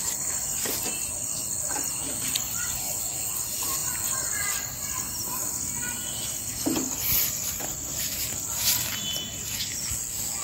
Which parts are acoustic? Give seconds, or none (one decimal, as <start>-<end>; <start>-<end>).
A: 0.0-10.4